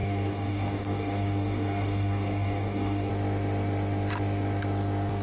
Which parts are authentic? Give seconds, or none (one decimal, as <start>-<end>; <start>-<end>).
3.1-5.2